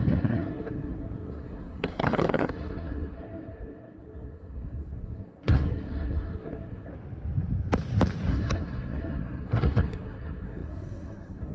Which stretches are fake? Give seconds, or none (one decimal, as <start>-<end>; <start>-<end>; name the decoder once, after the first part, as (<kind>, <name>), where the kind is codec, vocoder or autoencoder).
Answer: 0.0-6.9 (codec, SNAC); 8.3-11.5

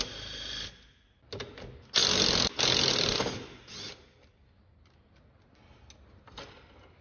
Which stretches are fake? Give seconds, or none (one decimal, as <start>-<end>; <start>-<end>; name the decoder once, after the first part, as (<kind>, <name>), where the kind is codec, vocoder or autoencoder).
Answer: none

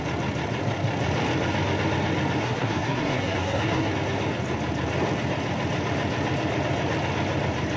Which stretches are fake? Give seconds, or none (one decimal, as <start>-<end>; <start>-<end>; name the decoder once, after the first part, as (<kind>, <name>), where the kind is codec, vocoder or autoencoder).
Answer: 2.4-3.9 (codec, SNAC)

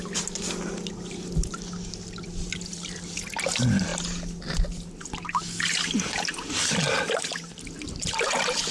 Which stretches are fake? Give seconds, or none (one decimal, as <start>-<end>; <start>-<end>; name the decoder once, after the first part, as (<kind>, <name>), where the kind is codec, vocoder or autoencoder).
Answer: none

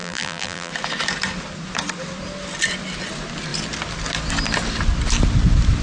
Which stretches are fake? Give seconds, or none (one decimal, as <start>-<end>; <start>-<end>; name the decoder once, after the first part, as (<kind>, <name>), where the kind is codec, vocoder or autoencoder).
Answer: 0.0-0.7 (vocoder, BigVGAN v2)

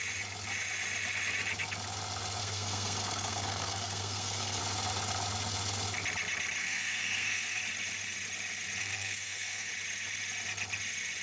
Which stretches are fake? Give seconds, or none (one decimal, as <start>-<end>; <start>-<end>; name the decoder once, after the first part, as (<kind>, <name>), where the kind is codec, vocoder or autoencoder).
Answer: 2.4-4.6 (codec, SNAC); 6.6-7.6; 8.8-9.7